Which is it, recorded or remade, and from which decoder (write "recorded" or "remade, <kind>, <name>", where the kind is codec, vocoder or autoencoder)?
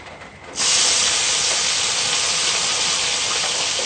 recorded